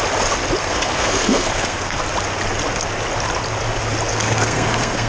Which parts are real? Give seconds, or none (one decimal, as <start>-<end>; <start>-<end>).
0.0-0.6; 2.0-4.1